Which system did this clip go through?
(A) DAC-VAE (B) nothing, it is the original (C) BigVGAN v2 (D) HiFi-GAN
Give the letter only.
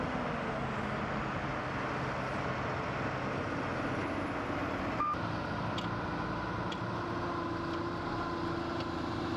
B